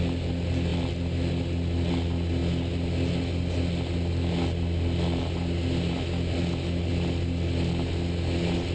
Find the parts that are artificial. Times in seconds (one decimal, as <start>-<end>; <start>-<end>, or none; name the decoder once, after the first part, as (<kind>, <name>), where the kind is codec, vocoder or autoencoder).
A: none